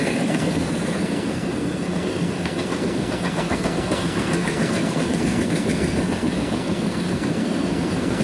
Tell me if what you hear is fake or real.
fake